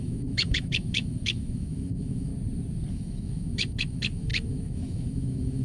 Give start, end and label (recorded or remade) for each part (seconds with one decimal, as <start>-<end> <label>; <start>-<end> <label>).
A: 0.0-2.3 remade; 2.3-2.9 recorded; 2.9-5.6 remade